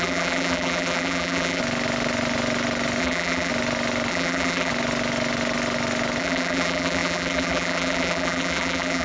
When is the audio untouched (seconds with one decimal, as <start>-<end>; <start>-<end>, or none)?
1.6-3.0; 3.5-4.1; 4.7-6.2